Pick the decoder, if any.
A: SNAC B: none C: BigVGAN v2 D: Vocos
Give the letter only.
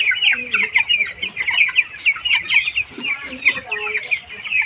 B